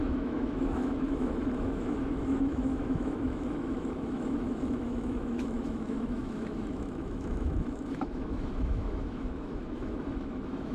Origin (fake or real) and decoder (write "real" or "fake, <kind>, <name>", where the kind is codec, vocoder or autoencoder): fake, autoencoder, DAC-VAE